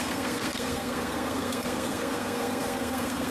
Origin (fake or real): fake